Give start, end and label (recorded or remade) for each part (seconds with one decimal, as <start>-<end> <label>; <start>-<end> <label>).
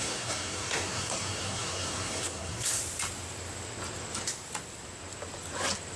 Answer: 0.0-2.8 remade; 2.8-6.0 recorded